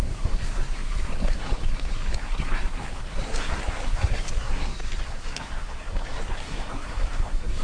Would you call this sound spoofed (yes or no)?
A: yes